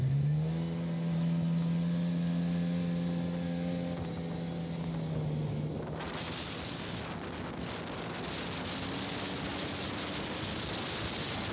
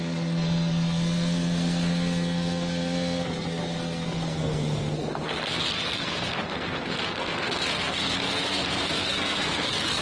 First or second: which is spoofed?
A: second